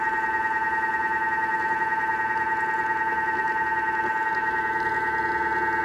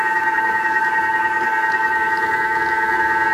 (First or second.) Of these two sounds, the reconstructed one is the second